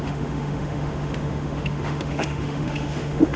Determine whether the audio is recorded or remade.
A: remade